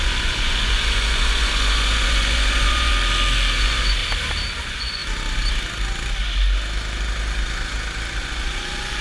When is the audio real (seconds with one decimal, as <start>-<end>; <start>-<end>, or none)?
2.9-3.6; 4.0-4.6; 5.0-8.2